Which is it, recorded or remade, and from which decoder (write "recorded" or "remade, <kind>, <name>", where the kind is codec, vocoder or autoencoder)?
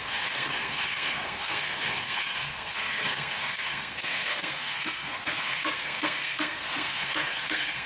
remade, codec, SNAC